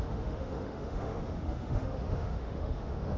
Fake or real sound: fake